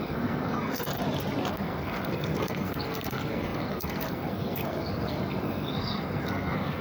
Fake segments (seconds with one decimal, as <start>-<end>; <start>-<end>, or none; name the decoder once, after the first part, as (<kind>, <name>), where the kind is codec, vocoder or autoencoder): 0.0-0.9 (codec, SNAC); 1.5-6.8